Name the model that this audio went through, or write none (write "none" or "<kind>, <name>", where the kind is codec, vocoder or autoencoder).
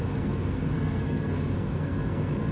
codec, SNAC